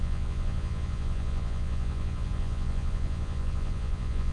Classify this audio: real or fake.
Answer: fake